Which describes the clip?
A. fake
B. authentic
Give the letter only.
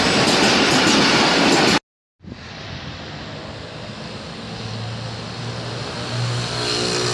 B